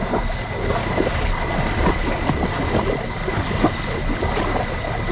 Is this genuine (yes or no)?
yes